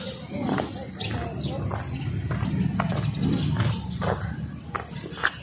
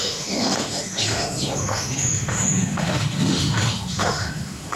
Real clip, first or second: first